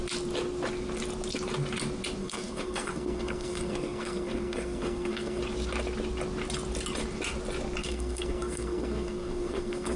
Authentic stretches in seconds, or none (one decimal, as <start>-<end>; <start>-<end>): 0.0-2.2; 5.4-7.8